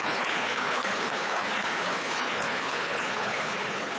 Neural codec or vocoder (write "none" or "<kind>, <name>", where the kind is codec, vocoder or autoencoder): codec, HILCodec